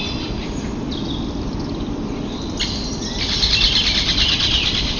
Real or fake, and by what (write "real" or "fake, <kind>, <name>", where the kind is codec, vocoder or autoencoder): real